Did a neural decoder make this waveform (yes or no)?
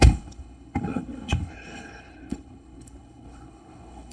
yes